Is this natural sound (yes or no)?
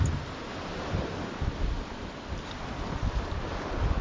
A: yes